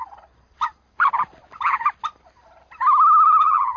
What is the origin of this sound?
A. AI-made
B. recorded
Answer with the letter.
B